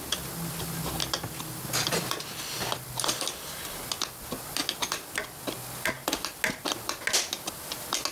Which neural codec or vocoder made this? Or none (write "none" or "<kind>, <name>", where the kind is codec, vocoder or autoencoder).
none